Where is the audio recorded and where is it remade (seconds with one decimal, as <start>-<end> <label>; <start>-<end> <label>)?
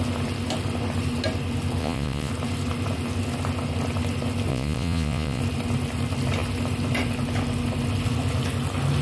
0.0-1.8 recorded; 1.8-2.3 remade; 2.3-4.5 recorded; 4.5-5.4 remade; 5.4-9.0 recorded